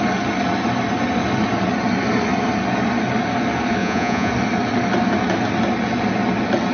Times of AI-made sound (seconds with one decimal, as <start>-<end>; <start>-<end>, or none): 3.8-4.3